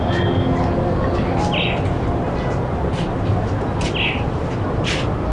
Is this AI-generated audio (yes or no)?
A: no